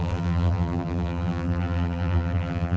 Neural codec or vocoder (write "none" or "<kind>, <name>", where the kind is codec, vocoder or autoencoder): vocoder, BigVGAN v2